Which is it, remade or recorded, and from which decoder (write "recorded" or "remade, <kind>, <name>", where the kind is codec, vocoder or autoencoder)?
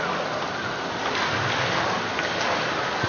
recorded